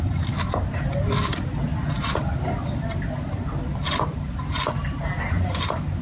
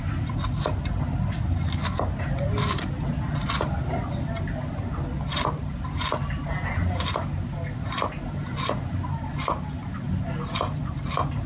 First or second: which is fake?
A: first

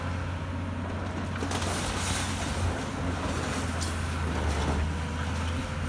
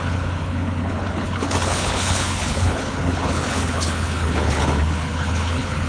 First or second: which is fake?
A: second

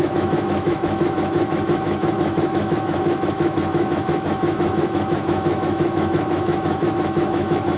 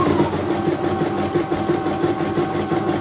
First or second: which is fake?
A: first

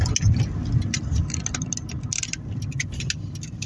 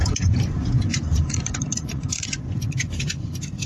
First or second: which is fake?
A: second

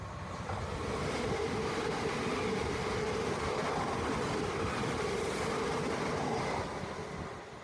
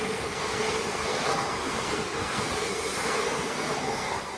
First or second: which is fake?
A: second